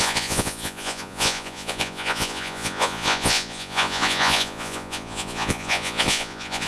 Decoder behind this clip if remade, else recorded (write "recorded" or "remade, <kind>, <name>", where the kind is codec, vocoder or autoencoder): remade, vocoder, Vocos